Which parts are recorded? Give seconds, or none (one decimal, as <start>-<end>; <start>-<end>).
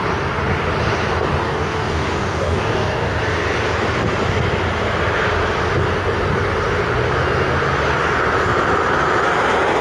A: 0.0-1.4; 3.2-9.8